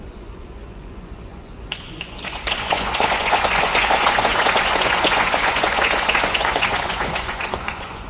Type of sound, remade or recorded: remade